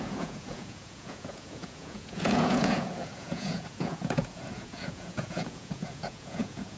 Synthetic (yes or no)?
yes